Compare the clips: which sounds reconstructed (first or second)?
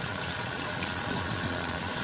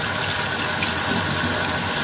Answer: first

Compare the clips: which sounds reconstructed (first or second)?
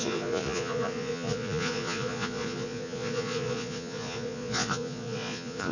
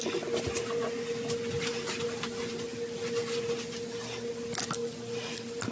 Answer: first